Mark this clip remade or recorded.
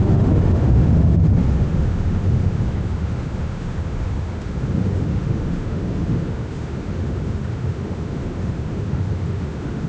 remade